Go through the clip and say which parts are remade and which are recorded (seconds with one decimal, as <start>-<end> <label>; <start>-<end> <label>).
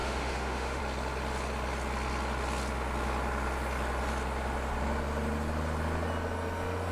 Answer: 0.0-0.8 remade; 0.8-6.9 recorded